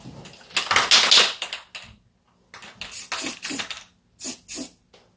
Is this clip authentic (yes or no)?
yes